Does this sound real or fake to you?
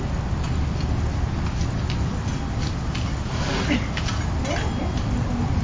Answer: real